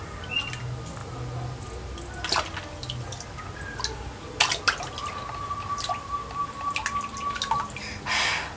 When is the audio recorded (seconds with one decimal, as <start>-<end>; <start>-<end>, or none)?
0.0-8.6